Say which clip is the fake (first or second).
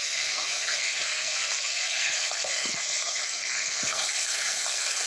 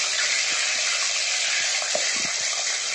first